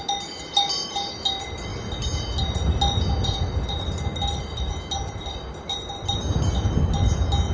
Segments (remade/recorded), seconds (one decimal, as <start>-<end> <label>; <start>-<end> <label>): 0.0-7.5 recorded